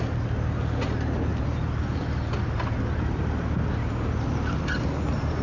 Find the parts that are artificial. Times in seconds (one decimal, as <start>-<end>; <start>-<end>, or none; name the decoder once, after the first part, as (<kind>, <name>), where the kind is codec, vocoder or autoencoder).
none